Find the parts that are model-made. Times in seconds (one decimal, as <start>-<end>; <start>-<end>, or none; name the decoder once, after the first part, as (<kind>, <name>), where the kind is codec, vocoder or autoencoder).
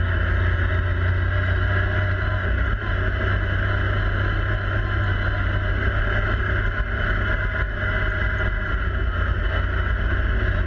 none